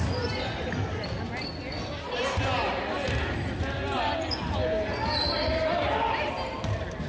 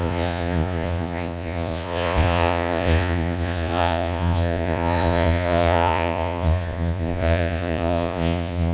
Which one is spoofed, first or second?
second